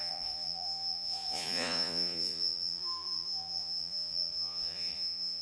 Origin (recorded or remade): remade